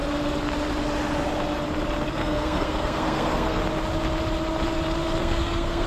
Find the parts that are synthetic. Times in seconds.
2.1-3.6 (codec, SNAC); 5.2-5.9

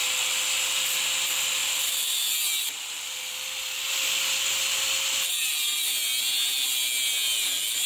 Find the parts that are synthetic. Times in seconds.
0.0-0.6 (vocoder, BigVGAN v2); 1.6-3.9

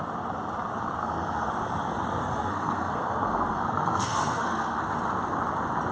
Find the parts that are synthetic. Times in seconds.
1.0-1.5 (codec, SNAC); 2.2-5.0

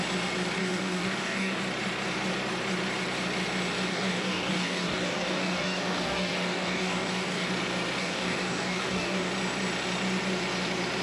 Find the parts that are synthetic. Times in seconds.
0.6-1.6 (codec, DAC); 3.9-7.5; 8.0-9.3